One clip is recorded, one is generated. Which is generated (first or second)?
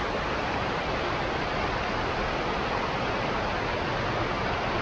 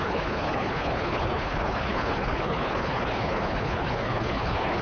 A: second